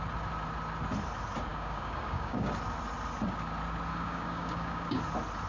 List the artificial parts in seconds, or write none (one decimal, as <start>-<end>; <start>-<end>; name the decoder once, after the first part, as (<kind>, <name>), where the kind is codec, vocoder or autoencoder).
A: 1.5-2.5 (codec, DAC); 3.9-5.0